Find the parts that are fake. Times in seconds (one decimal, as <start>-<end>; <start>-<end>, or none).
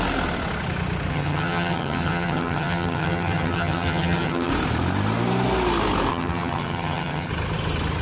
1.1-4.5; 6.1-7.3